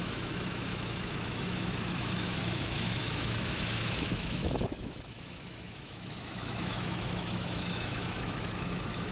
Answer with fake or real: fake